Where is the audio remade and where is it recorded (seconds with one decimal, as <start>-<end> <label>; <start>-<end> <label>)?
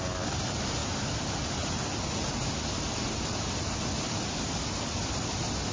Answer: 0.0-5.7 recorded